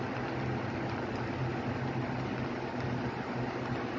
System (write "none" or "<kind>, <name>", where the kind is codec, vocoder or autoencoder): none